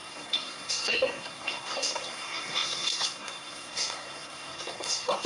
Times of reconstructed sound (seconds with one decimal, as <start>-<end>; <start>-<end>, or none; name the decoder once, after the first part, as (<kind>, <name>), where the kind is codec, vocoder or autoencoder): 0.0-5.3 (codec, SNAC)